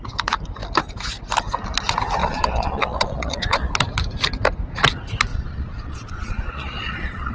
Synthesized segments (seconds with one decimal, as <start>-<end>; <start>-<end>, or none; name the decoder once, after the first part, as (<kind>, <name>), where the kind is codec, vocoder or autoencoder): 2.2-3.7 (vocoder, Vocos); 5.3-7.3